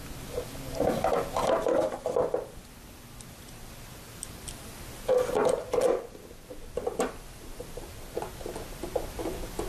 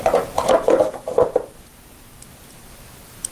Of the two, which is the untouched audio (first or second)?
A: first